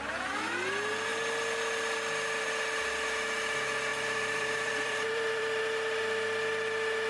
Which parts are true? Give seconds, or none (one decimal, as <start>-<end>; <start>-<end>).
0.0-3.9; 5.6-7.1